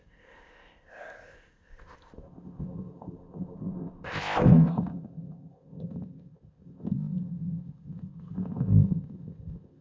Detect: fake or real fake